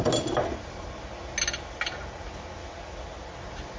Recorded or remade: recorded